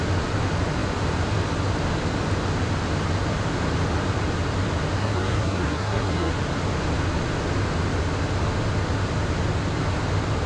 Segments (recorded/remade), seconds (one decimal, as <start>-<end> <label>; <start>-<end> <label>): 0.0-5.0 recorded; 5.0-6.3 remade; 6.3-10.5 recorded